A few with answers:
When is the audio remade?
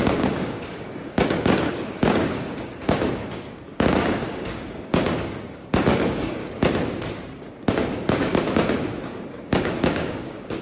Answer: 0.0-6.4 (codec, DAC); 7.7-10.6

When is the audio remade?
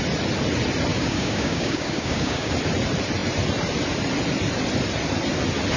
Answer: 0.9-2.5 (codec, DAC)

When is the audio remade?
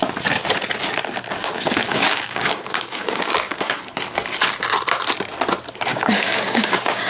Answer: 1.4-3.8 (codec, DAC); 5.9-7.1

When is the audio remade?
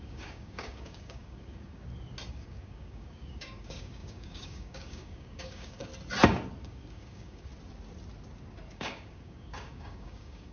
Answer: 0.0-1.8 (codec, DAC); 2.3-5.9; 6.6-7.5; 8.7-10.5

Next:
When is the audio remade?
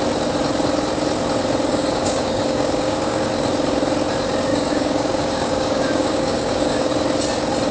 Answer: 1.7-3.3 (codec, DAC); 4.5-6.9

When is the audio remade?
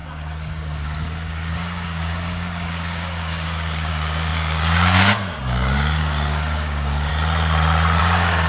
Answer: 0.0-7.1 (codec, DAC); 8.0-8.5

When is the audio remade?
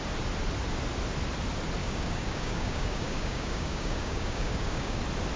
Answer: 1.8-5.0 (codec, DAC)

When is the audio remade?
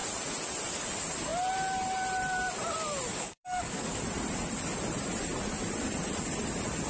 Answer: 3.1-4.0 (codec, DAC)